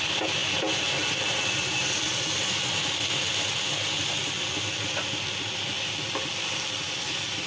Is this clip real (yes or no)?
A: yes